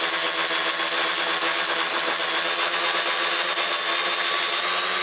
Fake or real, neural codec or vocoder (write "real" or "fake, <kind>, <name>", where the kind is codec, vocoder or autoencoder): real